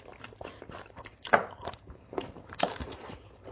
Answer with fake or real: fake